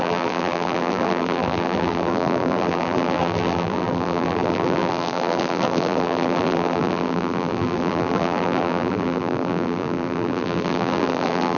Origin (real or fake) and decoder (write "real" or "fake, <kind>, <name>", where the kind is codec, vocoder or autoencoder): fake, vocoder, BigVGAN v2